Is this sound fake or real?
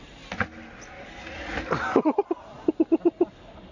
real